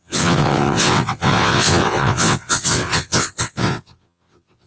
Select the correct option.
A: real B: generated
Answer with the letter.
B